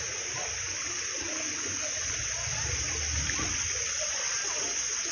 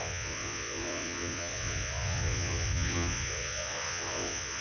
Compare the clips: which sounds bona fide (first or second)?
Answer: first